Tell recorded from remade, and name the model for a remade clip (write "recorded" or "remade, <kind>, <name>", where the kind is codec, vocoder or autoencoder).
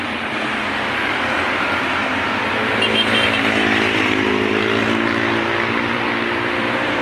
remade, vocoder, BigVGAN v2